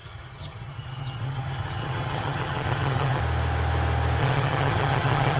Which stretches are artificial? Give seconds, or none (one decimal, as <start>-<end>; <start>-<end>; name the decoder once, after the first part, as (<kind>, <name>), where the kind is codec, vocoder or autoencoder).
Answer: 0.0-3.2 (vocoder, HiFi-GAN); 4.2-5.4